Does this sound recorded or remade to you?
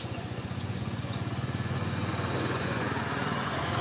remade